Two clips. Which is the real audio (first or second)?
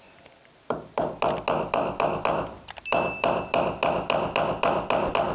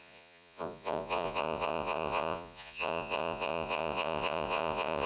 first